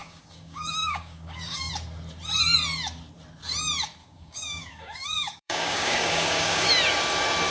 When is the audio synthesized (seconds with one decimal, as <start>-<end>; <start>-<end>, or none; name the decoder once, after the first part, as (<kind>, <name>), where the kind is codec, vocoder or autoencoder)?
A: 0.0-1.7 (codec, DAC); 4.0-6.7